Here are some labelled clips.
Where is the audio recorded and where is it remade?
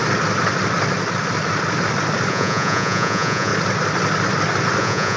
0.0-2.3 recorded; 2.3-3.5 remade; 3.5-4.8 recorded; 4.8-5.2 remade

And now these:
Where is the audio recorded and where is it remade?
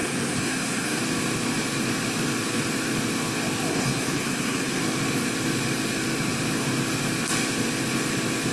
0.0-1.0 remade; 1.0-3.7 recorded; 3.7-4.8 remade; 4.8-8.5 recorded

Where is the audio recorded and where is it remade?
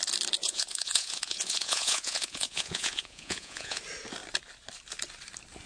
0.0-0.4 recorded; 0.4-3.8 remade; 3.8-5.7 recorded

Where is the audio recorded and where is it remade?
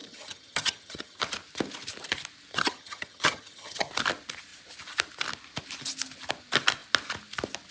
0.0-1.2 remade; 1.2-2.5 recorded; 2.5-3.9 remade; 3.9-7.7 recorded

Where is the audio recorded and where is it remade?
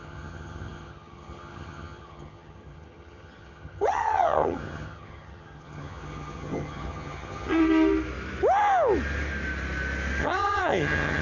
0.0-7.6 remade; 7.6-10.2 recorded; 10.2-11.2 remade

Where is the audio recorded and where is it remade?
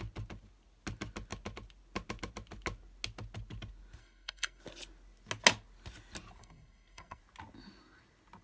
0.0-4.0 recorded; 4.0-4.6 remade; 4.6-6.4 recorded; 6.4-7.2 remade; 7.2-8.4 recorded